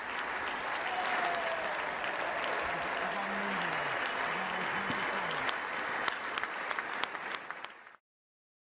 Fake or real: real